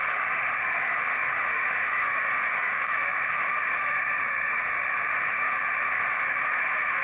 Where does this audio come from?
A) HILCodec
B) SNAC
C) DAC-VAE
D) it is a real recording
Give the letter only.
C